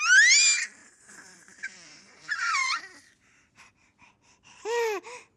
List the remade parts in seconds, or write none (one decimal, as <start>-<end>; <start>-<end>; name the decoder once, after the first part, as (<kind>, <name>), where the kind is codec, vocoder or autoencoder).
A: 0.8-2.8 (vocoder, Vocos)